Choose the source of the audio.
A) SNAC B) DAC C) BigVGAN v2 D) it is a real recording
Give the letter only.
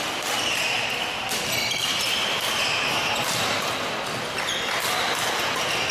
D